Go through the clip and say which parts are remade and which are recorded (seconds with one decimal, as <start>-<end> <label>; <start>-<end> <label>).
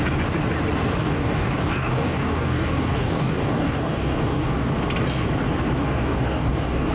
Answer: 0.0-1.0 recorded; 1.0-4.7 remade; 4.7-5.8 recorded; 5.8-6.9 remade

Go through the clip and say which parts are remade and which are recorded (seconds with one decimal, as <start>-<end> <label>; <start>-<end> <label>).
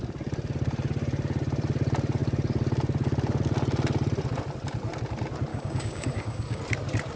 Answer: 0.0-5.5 recorded; 5.5-6.6 remade; 6.6-7.2 recorded